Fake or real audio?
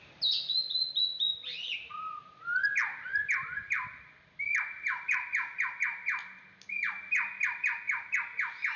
real